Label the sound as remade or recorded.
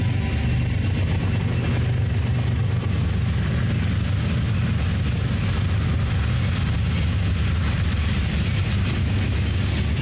recorded